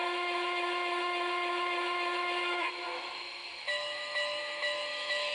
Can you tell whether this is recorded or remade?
remade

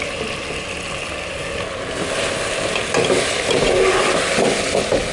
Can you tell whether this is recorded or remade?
recorded